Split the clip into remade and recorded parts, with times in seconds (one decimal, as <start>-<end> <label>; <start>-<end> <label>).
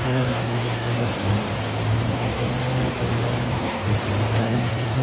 0.0-1.1 remade; 1.1-2.1 recorded; 2.1-2.5 remade; 2.5-3.5 recorded; 3.5-3.9 remade; 3.9-4.4 recorded; 4.4-5.0 remade